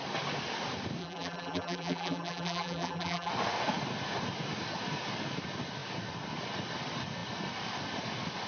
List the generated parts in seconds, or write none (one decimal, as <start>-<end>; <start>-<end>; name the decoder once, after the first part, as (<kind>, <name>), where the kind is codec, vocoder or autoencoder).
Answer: 1.0-3.3 (vocoder, BigVGAN v2)